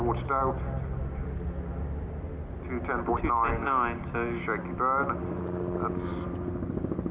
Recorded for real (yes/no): yes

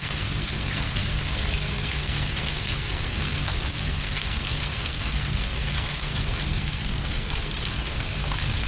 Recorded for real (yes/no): no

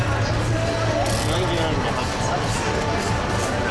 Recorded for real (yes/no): yes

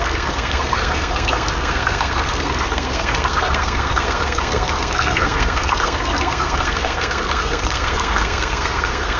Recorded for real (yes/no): no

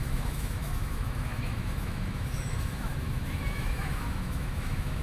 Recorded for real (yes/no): no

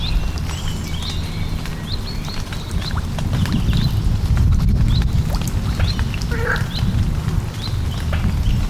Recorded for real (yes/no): yes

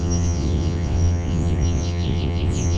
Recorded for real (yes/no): no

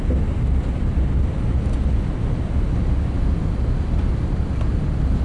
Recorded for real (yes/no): yes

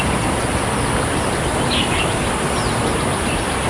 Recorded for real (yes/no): yes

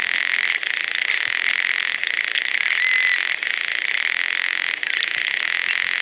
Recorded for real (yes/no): yes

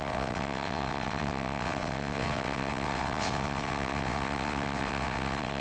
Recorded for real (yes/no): no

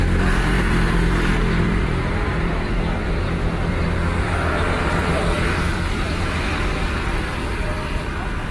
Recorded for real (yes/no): no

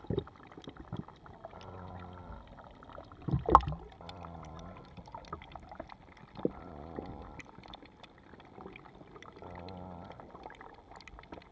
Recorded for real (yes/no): yes